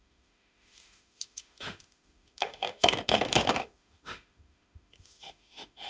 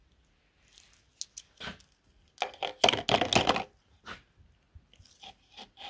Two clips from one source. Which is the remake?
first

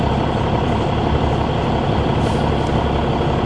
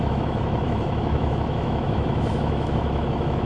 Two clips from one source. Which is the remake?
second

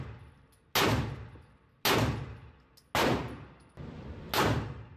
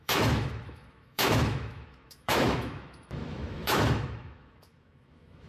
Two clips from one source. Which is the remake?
second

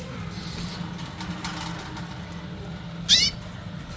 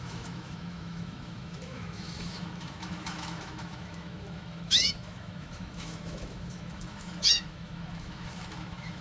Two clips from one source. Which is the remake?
second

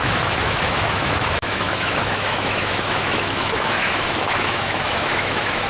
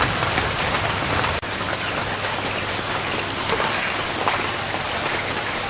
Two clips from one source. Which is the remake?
first